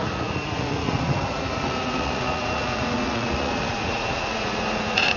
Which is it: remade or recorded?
remade